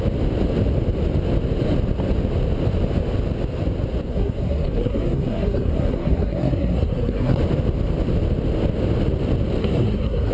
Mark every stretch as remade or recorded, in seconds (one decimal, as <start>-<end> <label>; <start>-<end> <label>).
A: 0.0-4.1 recorded; 4.1-7.4 remade; 7.4-9.6 recorded; 9.6-10.3 remade